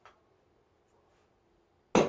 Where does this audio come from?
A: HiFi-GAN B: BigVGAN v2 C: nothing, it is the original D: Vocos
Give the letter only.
C